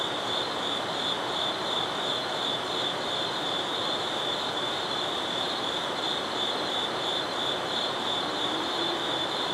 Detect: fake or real fake